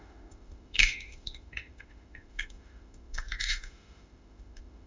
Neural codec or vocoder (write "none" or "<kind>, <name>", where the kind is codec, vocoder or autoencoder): autoencoder, DAC-VAE